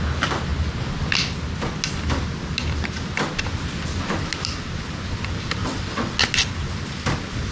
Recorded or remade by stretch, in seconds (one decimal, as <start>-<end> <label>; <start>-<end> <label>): 0.0-5.6 recorded; 5.6-6.2 remade; 6.2-7.5 recorded